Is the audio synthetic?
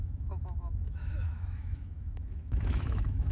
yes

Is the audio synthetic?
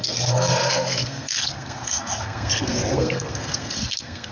yes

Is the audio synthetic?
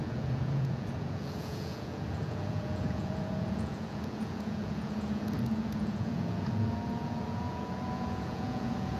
yes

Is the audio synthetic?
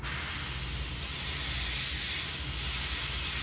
no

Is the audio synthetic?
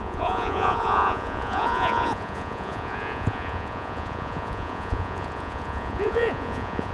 yes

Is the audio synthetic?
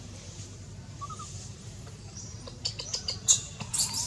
yes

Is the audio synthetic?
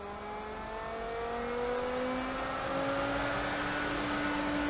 no